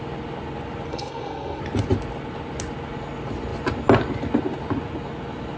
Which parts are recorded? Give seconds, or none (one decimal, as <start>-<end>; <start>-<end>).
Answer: 0.0-0.9; 1.6-5.6